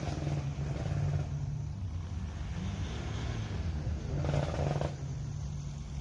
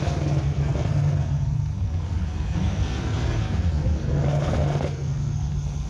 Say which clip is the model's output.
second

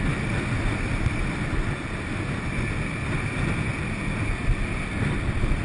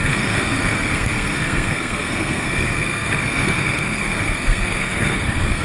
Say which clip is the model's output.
second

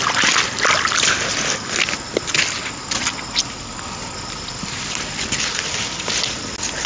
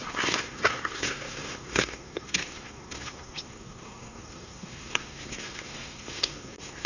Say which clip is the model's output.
second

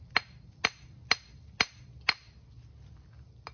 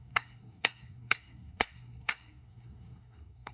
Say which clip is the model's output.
second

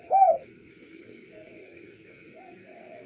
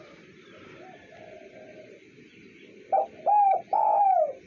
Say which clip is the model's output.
first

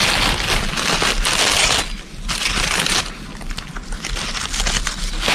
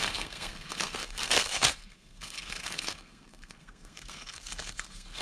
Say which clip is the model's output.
second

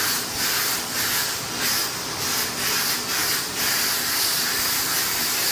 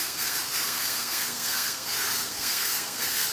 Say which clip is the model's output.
second